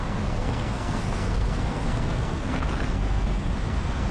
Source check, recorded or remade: remade